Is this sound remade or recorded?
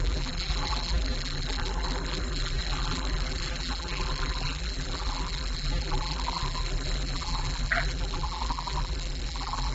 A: remade